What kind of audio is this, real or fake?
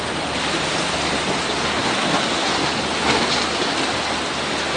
real